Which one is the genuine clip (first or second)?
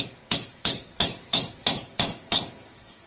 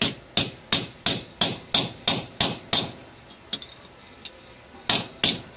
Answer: second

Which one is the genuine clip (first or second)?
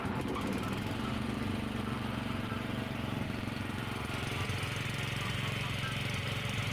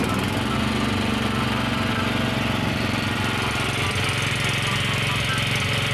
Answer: second